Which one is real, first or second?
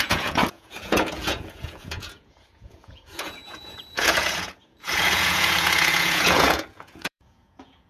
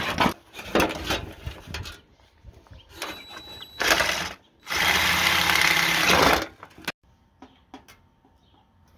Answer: second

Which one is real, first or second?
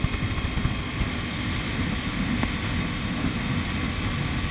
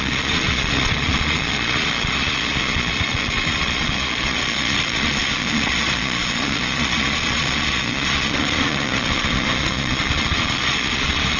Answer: first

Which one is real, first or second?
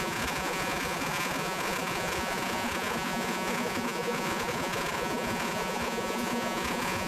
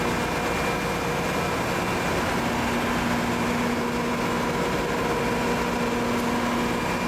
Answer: second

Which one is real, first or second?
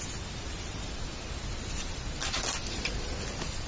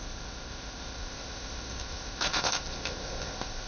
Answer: first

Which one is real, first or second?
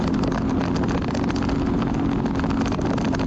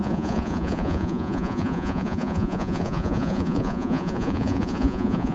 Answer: first